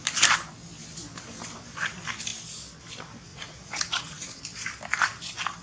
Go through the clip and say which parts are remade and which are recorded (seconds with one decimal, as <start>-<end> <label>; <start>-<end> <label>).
0.0-3.3 recorded; 3.3-4.4 remade; 4.4-5.6 recorded